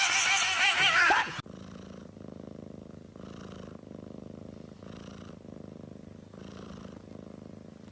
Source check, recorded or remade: recorded